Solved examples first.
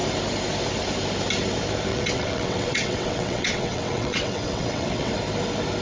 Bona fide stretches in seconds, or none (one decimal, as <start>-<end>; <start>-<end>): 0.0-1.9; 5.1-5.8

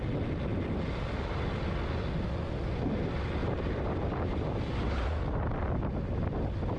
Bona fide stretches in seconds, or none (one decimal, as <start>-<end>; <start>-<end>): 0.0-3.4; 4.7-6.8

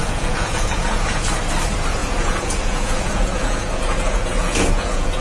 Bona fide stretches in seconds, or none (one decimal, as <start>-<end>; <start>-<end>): 1.4-2.0

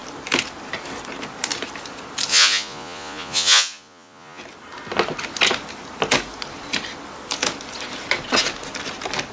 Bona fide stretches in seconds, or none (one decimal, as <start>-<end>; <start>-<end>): 0.0-2.3; 4.4-9.3

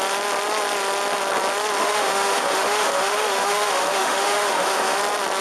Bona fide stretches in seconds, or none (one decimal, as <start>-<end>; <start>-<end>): 0.0-1.8; 5.0-5.4

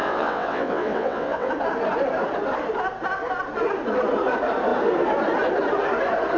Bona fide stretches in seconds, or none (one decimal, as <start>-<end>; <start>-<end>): 1.5-6.4